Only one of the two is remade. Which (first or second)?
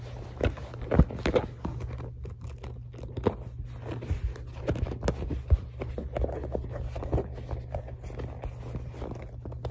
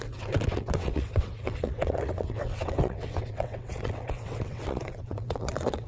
second